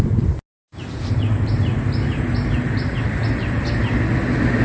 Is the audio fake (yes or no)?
no